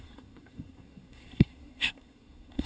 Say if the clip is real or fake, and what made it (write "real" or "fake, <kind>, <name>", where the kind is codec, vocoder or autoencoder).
fake, codec, SNAC